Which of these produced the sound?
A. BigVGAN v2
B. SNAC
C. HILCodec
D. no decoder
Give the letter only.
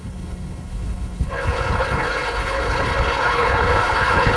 C